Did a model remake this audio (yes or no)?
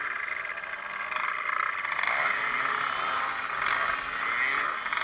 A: no